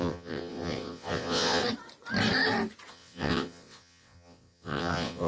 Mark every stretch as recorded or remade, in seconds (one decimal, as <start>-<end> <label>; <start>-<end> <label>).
0.0-1.6 remade; 1.6-2.9 recorded; 2.9-5.3 remade